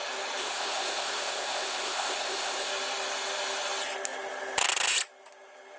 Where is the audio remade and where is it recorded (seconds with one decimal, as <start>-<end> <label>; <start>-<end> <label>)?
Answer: 0.0-0.4 recorded; 0.4-2.7 remade; 2.7-5.8 recorded